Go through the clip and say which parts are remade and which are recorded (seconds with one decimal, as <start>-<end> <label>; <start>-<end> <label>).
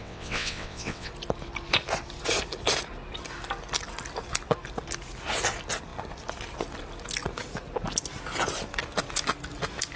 0.0-1.1 remade; 1.1-10.0 recorded